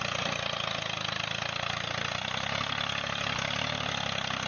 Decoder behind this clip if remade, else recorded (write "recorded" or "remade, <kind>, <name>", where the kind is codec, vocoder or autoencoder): recorded